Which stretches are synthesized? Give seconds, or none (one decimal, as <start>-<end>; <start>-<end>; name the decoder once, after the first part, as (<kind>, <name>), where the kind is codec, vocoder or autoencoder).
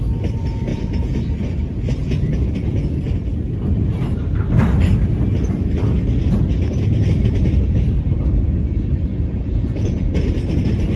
0.7-1.2 (vocoder, Vocos); 2.0-3.0; 9.1-10.1